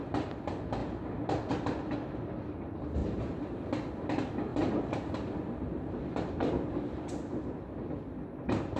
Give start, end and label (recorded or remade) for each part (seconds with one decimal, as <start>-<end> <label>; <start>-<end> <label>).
0.0-3.0 recorded; 3.0-3.6 remade; 3.6-4.5 recorded; 4.5-7.1 remade; 7.1-8.8 recorded